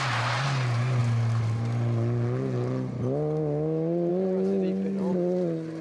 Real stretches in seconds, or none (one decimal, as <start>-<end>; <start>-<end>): 0.0-5.8

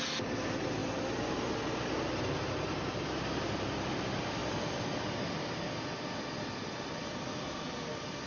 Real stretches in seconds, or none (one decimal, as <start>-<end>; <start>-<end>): 0.0-8.3

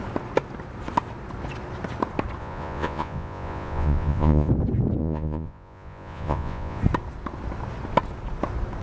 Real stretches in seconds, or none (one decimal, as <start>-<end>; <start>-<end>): 0.0-2.4; 4.5-5.0; 6.8-8.8

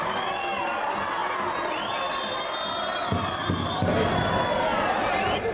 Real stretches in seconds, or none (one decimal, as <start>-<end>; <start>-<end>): 0.0-5.5

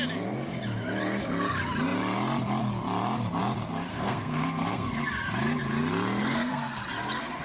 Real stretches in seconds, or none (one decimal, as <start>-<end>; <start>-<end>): 0.0-3.9; 5.0-6.2; 6.8-7.4

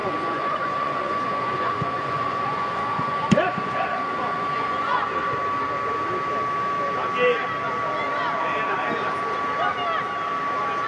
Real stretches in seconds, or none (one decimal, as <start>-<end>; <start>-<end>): 5.3-10.9

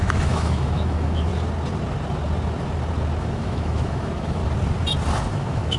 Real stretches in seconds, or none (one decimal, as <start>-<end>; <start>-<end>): 1.3-3.2; 4.4-5.3

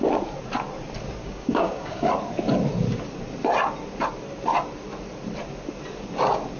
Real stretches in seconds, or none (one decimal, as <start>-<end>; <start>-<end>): 0.0-1.2; 2.1-6.6